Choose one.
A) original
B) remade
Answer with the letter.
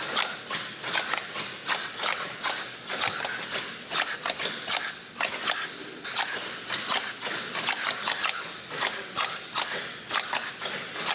A